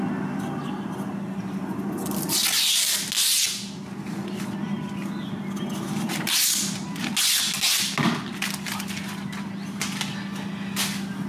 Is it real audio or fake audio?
real